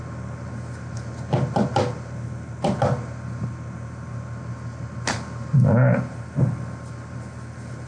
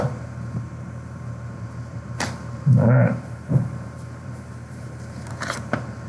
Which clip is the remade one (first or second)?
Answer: second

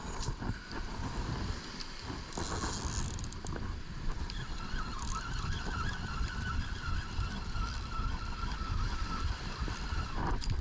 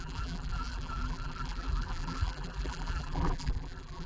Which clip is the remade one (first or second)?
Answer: second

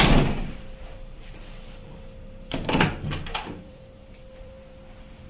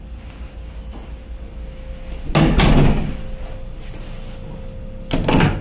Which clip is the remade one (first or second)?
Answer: first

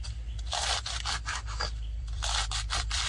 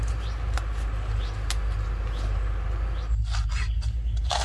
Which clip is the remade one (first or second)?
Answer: first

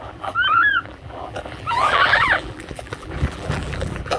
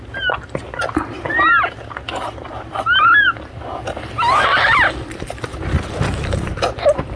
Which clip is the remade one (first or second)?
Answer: first